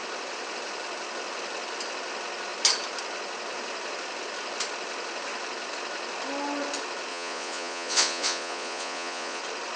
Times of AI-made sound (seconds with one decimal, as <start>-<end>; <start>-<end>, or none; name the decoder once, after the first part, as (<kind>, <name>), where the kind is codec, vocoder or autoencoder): 7.1-9.4 (vocoder, Vocos)